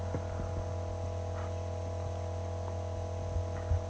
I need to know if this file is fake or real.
real